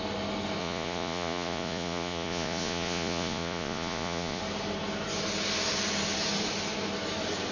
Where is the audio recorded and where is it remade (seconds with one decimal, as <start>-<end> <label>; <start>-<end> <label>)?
0.0-0.6 recorded; 0.6-4.4 remade; 4.4-7.5 recorded